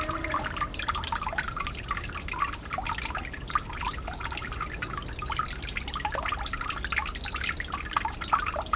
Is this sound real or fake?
real